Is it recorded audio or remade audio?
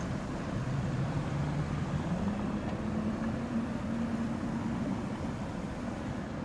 recorded